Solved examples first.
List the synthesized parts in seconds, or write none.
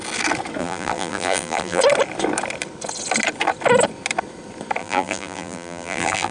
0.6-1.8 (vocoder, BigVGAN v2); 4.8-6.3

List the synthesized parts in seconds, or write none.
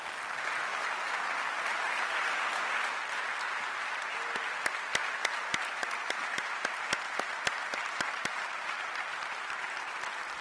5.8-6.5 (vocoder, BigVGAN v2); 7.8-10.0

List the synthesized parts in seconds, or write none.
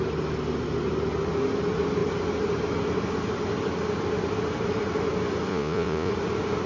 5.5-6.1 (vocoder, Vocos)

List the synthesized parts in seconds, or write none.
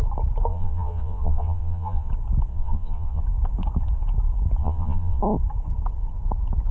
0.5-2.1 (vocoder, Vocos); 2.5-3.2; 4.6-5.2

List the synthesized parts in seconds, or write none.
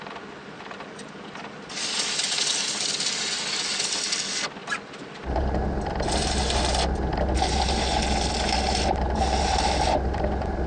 none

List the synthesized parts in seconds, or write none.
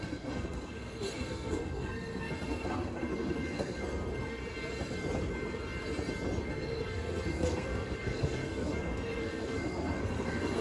0.0-4.4 (codec, SNAC); 6.4-10.6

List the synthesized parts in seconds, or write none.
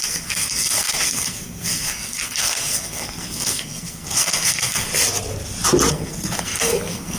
0.0-4.9 (codec, SNAC); 5.9-7.2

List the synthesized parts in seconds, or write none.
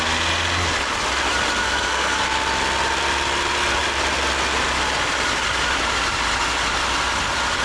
1.6-2.2 (codec, SNAC)